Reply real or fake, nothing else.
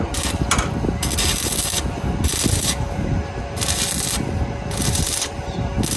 real